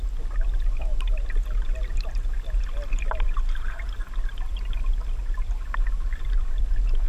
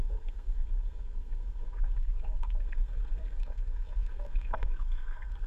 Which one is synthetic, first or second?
second